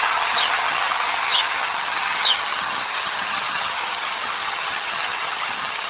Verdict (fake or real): fake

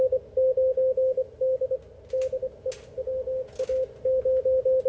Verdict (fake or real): real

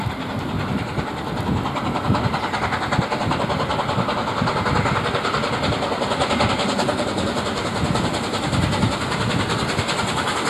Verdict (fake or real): real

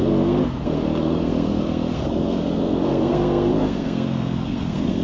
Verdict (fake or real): fake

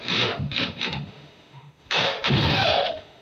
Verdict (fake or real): fake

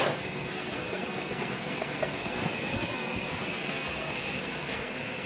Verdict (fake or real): fake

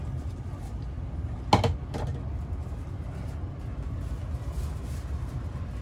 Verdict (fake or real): real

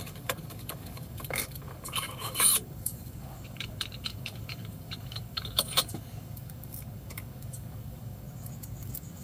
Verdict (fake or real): fake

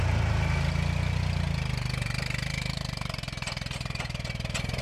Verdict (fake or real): real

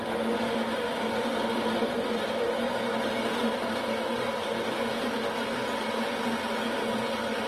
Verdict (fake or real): real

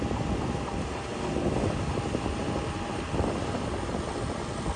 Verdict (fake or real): real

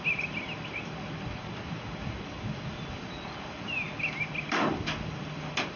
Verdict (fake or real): real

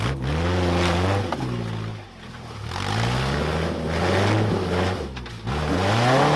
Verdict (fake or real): real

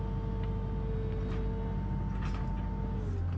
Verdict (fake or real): real